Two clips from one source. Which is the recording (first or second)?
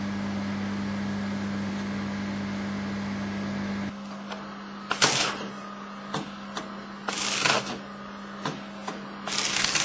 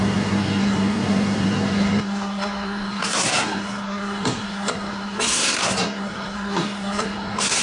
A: first